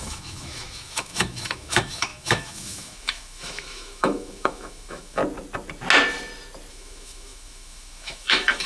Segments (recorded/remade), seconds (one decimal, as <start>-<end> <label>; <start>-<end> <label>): 0.0-5.2 remade; 5.2-6.7 recorded; 6.7-8.7 remade